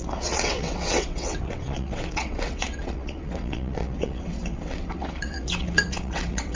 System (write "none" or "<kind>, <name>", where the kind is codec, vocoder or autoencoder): vocoder, WaveNeXt